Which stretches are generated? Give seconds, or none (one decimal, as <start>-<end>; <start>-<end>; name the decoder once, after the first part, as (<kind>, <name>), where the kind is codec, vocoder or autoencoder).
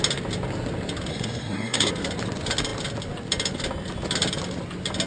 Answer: 1.1-1.9 (codec, SNAC)